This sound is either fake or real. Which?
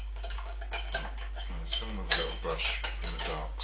fake